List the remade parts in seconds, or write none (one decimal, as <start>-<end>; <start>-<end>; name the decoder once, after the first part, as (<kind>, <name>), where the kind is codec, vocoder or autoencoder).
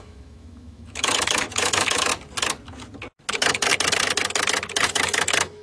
0.0-2.1 (autoencoder, DAC-VAE); 3.3-3.7; 4.9-5.6